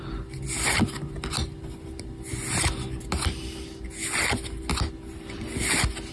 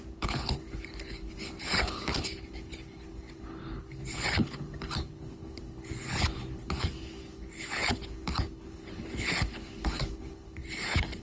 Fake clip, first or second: second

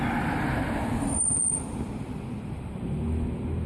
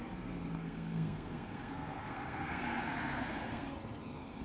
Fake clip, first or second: second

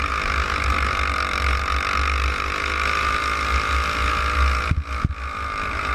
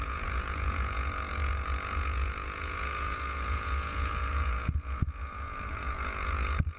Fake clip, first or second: second